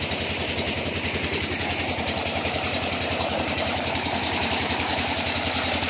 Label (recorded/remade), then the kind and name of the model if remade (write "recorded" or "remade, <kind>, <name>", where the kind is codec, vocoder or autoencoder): remade, vocoder, BigVGAN v2